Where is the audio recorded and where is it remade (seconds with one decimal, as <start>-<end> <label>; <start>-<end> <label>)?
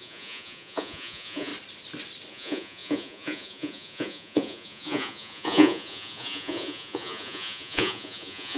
0.0-1.5 remade; 1.5-2.3 recorded; 2.3-8.6 remade